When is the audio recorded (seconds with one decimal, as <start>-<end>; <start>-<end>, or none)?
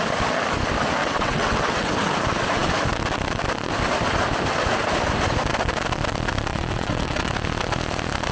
0.0-1.0; 1.9-6.5; 7.3-8.3